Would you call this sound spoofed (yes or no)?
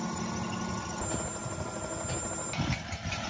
no